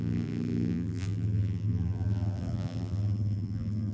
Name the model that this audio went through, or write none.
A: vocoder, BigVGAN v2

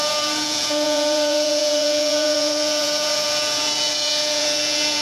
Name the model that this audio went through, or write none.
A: vocoder, Vocos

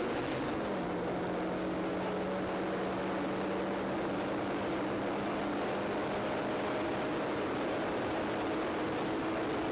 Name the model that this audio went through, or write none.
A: none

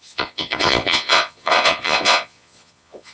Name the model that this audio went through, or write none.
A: vocoder, Vocos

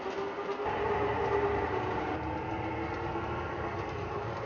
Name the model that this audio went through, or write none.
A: none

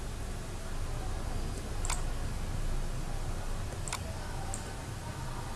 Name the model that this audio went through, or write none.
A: none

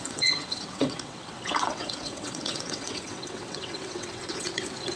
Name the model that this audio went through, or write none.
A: vocoder, WaveNeXt